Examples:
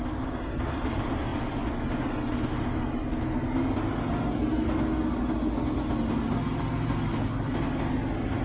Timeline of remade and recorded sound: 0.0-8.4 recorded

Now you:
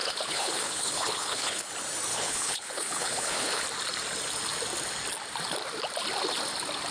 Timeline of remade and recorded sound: 0.0-1.7 remade; 1.7-2.1 recorded; 2.1-3.6 remade; 3.6-6.9 recorded

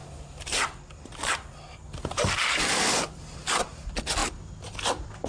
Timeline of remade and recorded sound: 0.0-5.3 recorded

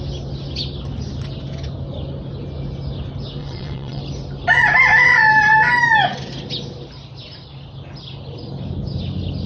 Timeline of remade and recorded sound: 0.0-3.4 recorded; 3.4-4.0 remade; 4.0-9.5 recorded